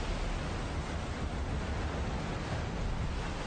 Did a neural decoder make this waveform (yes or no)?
no